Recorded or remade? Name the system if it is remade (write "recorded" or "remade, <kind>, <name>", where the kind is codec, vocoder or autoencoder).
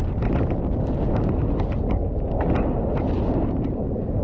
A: recorded